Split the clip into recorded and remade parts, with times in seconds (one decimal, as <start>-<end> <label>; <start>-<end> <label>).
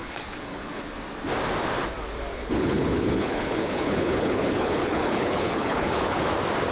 0.0-0.8 remade; 0.8-2.3 recorded; 2.3-6.3 remade; 6.3-6.7 recorded